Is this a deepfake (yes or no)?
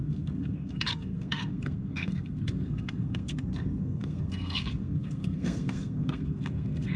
yes